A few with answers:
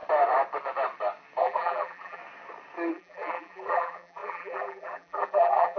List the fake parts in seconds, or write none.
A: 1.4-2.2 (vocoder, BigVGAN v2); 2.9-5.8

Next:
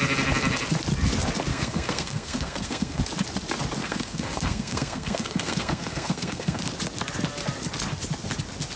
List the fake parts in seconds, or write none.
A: 1.5-3.0 (codec, SNAC); 3.8-6.6

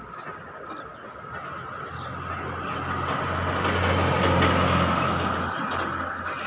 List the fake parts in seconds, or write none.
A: none

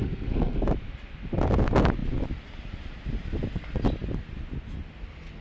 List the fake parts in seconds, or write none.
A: 0.0-0.6 (codec, SNAC)

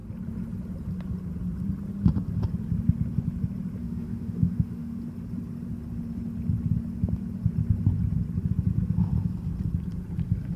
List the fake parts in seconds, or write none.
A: 3.8-5.0 (autoencoder, DAC-VAE)

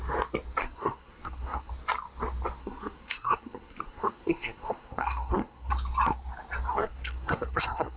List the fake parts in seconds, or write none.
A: 0.6-1.7 (codec, SNAC); 2.6-5.7; 6.7-8.0

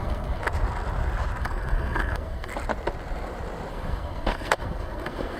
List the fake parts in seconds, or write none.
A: 0.0-0.4 (codec, SNAC); 1.4-2.5; 3.7-5.4